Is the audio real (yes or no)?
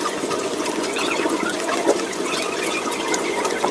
no